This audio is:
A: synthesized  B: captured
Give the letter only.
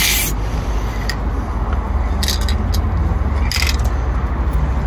B